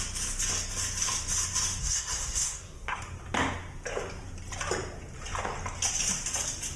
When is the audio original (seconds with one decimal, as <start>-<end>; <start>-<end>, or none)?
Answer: 0.0-1.8; 3.0-6.8